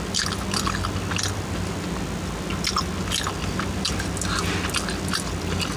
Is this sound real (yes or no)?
yes